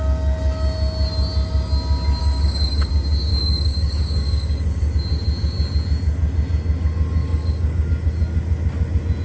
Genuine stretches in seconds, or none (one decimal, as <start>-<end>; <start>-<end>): 0.0-2.2; 2.9-3.3; 4.9-7.2; 7.9-9.2